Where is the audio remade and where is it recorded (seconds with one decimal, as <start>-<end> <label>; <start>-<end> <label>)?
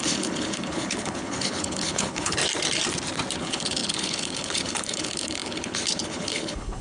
0.0-2.4 remade; 2.4-3.4 recorded; 3.4-6.8 remade